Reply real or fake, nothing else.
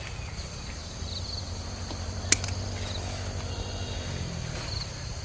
real